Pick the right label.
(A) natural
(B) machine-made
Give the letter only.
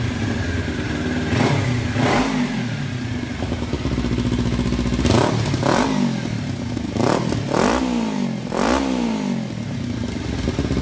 A